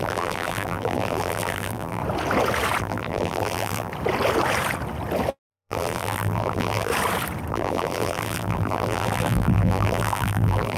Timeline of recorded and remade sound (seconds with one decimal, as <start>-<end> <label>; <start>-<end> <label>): 0.0-2.0 remade; 2.0-2.8 recorded; 2.8-3.9 remade; 3.9-5.5 recorded; 5.5-6.9 remade; 6.9-7.5 recorded; 7.5-10.8 remade